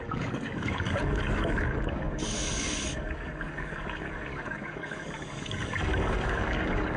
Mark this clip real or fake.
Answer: fake